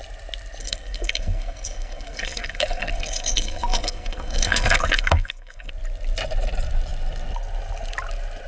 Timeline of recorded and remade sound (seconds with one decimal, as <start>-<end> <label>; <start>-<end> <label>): 0.0-0.6 recorded; 0.6-5.7 remade; 5.7-8.5 recorded